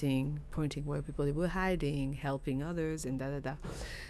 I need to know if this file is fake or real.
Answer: fake